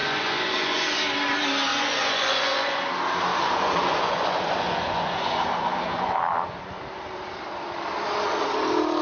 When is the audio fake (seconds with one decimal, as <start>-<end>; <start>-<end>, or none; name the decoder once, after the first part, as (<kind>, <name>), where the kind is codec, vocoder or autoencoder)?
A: 0.0-1.0 (vocoder, Vocos); 1.7-2.8; 3.3-6.1